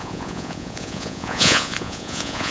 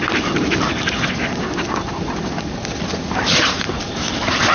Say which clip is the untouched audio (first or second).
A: second